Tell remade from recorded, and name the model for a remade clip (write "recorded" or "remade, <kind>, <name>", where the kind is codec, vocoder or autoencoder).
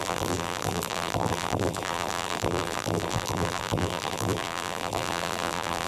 remade, vocoder, BigVGAN v2